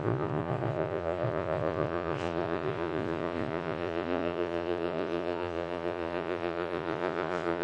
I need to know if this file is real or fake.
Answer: fake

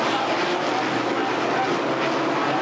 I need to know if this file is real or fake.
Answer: real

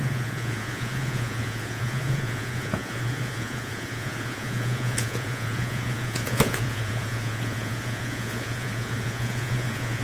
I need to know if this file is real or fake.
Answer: fake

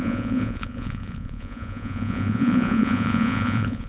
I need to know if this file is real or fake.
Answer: fake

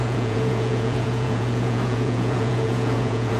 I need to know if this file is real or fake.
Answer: fake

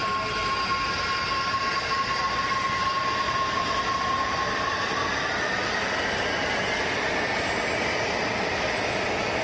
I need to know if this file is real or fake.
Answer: real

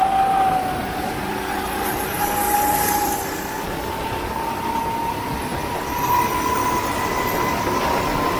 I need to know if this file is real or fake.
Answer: real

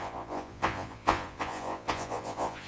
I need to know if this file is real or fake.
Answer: fake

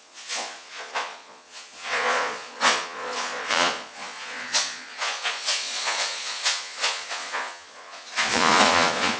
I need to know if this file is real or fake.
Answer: fake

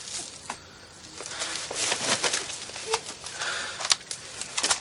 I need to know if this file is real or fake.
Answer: real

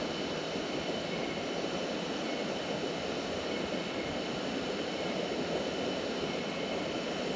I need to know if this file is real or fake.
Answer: real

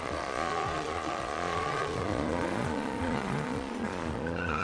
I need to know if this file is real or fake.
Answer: fake